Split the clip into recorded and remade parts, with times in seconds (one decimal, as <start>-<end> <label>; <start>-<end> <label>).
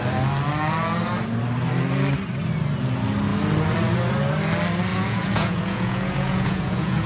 0.0-4.9 recorded; 4.9-7.1 remade